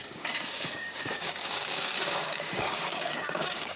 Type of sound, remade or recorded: remade